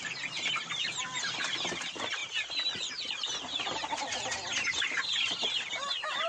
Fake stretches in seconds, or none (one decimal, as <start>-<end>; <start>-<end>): none